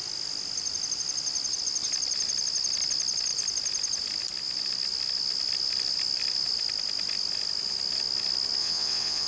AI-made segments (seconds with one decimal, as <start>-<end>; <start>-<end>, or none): 8.6-9.3